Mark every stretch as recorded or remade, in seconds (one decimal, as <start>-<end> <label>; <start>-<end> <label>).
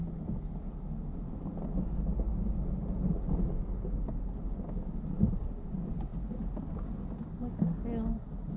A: 0.0-8.6 recorded